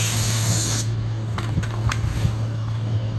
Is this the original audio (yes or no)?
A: no